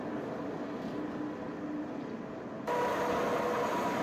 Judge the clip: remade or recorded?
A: recorded